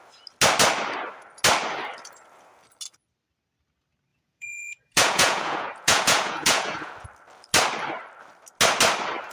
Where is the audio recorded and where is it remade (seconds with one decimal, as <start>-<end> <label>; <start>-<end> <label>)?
0.0-4.1 recorded; 4.1-6.9 remade; 6.9-9.3 recorded